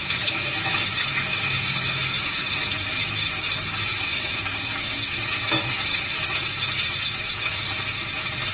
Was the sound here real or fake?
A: fake